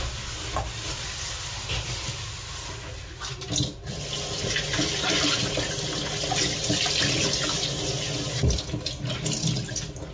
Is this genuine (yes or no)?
yes